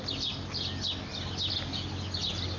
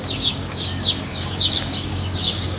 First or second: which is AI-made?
second